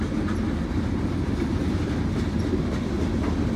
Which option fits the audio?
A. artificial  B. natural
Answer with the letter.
B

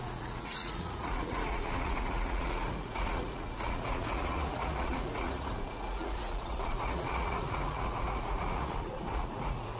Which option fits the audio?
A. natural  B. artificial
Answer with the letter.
B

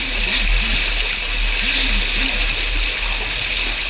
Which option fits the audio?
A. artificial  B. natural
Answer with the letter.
B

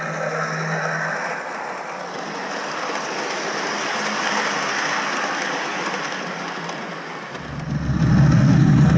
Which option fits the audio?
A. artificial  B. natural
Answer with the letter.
B